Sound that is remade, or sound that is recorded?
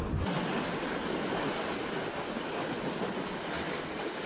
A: recorded